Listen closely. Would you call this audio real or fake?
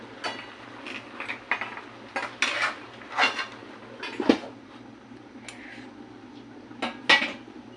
real